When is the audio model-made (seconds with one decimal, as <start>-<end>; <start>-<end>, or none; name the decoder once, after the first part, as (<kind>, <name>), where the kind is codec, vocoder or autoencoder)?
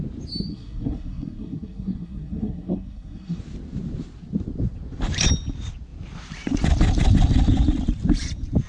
0.5-3.4 (codec, SNAC)